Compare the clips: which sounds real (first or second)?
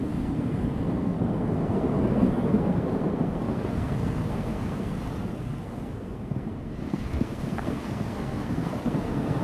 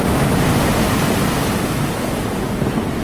second